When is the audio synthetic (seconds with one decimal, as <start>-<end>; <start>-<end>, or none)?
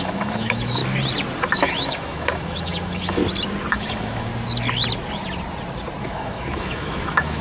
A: 0.0-0.8; 1.6-3.2; 3.7-4.3; 6.0-7.4